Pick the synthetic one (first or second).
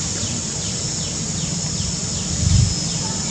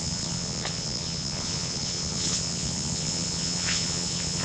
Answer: second